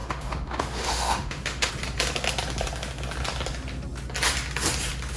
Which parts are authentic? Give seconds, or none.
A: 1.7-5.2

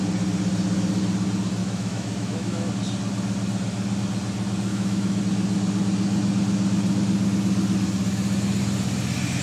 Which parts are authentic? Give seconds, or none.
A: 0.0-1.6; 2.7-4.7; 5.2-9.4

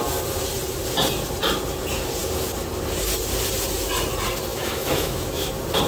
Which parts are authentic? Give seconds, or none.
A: 0.0-4.5; 5.5-5.9

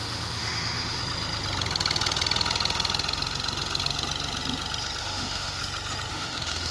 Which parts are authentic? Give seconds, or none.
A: 1.0-5.0; 5.6-6.1

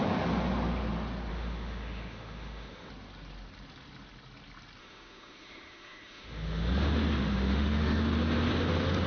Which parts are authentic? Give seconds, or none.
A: 0.0-1.3; 2.9-4.8; 6.7-7.2; 8.0-9.1

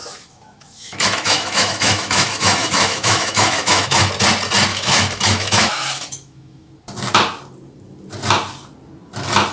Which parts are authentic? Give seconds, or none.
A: 4.1-4.7; 6.7-9.5